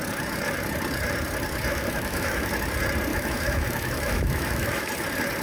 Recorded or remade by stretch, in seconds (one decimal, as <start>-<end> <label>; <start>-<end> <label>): 0.0-1.7 recorded; 1.7-2.5 remade; 2.5-3.1 recorded; 3.1-4.9 remade; 4.9-5.4 recorded